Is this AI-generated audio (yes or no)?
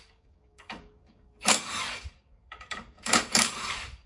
yes